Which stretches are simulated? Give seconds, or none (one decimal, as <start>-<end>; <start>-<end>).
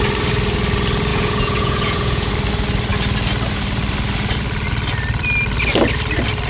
1.1-2.3